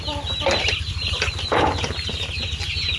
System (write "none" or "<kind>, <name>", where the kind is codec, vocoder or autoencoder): none